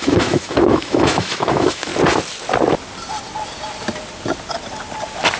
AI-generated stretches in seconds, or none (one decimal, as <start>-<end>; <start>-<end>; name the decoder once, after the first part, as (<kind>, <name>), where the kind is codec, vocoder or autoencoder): 0.0-1.9 (autoencoder, DAC-VAE)